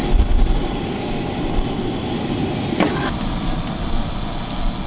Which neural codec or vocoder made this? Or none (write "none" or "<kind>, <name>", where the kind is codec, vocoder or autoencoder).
none